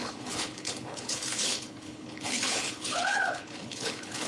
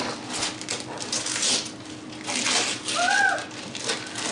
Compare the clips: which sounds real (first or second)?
second